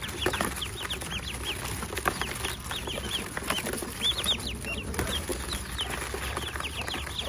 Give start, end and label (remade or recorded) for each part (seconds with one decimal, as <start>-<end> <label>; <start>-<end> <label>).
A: 0.0-7.3 recorded